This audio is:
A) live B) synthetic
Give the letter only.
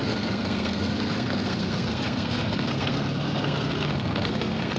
B